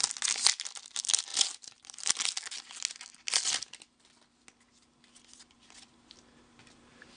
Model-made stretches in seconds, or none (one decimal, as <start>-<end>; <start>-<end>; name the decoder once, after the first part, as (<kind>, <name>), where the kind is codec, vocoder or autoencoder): none